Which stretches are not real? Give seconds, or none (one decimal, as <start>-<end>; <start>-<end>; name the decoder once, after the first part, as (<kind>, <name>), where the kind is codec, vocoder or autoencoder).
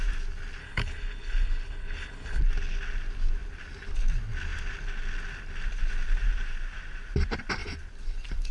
0.6-2.4 (codec, HILCodec)